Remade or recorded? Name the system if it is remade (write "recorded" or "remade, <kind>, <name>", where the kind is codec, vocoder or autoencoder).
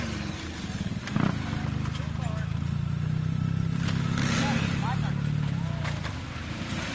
recorded